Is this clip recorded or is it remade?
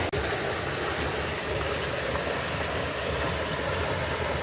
recorded